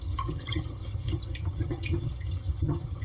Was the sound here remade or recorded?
remade